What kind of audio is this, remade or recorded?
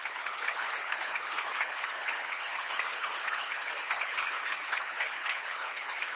remade